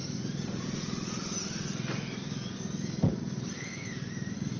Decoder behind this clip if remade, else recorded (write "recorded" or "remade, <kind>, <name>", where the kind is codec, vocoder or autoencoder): recorded